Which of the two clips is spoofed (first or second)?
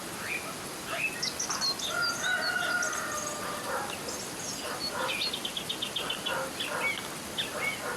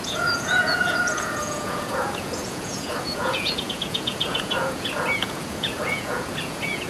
second